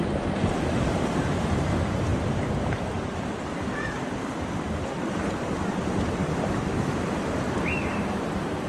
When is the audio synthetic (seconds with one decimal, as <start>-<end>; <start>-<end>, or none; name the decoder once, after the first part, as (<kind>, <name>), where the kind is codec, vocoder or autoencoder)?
0.0-2.1 (vocoder, BigVGAN v2); 4.6-8.7